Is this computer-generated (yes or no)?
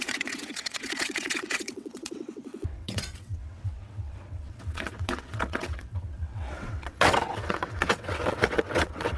yes